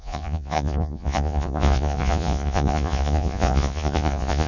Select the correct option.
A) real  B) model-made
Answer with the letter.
B